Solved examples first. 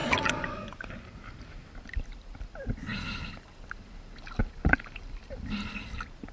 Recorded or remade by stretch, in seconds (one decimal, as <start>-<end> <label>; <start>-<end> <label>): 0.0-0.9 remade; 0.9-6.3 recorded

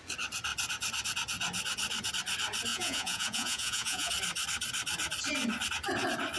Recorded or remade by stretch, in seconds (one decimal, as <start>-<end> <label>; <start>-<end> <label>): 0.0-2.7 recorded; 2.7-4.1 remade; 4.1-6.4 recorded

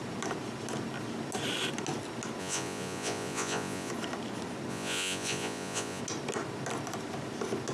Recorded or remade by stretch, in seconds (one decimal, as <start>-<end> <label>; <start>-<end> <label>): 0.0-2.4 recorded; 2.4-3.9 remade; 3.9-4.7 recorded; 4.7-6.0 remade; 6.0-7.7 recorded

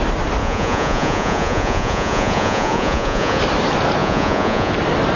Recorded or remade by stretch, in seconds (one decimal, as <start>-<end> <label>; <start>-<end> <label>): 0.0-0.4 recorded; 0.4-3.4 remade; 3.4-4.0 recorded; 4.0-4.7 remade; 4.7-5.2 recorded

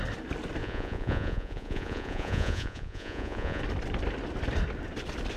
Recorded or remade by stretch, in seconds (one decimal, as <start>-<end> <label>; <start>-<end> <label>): 0.0-0.6 recorded; 0.6-3.6 remade; 3.6-5.4 recorded

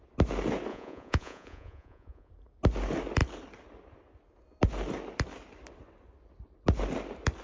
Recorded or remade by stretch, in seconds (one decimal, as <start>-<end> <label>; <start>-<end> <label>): 0.0-0.7 recorded; 0.7-2.3 remade; 2.3-7.4 recorded

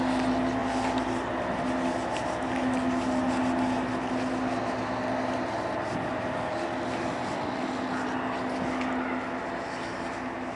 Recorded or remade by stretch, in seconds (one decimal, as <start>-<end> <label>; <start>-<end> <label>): 0.0-10.6 recorded